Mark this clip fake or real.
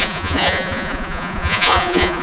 fake